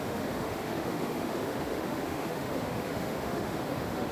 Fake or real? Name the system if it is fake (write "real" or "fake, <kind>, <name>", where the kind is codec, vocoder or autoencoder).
fake, autoencoder, DAC-VAE